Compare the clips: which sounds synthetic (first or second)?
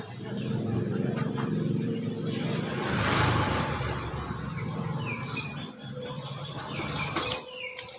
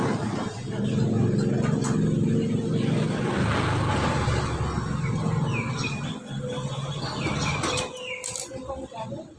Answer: first